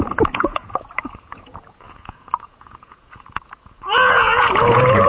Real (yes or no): no